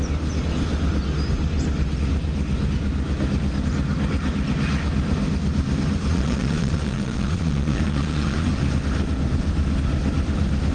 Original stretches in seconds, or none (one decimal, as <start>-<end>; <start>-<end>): 0.0-6.1; 8.5-10.7